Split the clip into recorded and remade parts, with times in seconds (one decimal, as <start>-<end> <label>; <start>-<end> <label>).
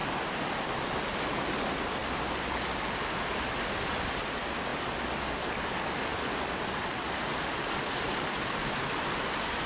0.0-9.7 recorded